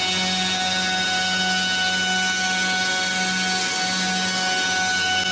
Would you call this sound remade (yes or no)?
no